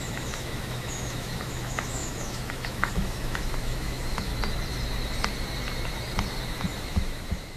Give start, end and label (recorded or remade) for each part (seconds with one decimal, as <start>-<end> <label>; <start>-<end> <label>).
0.0-4.3 remade; 4.3-6.8 recorded; 6.8-7.6 remade